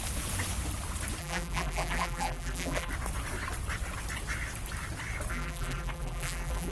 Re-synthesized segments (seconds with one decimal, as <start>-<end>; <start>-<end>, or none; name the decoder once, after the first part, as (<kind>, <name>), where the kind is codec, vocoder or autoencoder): 1.2-2.9 (vocoder, BigVGAN v2); 5.3-6.7

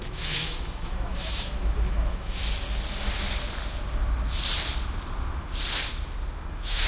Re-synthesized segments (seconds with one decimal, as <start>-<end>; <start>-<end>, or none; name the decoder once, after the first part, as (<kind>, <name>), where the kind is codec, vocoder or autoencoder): 0.0-2.4 (autoencoder, DAC-VAE); 6.5-6.9

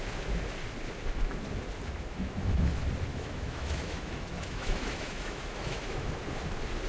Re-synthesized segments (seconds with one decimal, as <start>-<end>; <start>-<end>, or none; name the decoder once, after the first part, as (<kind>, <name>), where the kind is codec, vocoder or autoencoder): 2.1-2.7 (autoencoder, DAC-VAE); 3.1-6.1

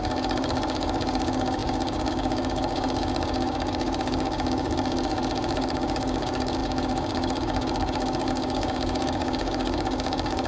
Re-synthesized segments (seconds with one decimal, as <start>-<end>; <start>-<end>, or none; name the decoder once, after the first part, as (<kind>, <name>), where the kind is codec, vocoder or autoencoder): 0.0-10.5 (codec, DAC)

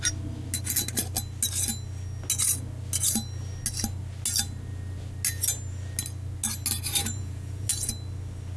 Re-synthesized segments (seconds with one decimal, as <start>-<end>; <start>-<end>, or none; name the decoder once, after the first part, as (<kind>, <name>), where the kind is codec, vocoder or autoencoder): 7.0-7.7 (vocoder, Vocos)

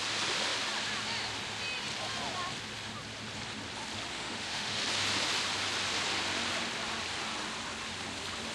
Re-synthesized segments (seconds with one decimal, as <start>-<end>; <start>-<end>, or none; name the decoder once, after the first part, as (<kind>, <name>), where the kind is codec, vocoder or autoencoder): 4.1-4.8 (autoencoder, DAC-VAE)

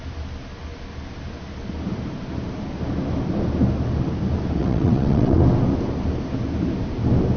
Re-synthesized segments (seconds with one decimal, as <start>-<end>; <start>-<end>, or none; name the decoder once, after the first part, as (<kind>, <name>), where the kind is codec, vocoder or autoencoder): 4.6-5.4 (vocoder, WaveNeXt)